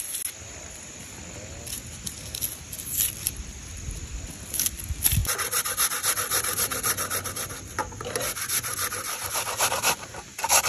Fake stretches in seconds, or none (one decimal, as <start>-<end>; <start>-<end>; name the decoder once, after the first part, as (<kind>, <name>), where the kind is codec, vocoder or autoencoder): none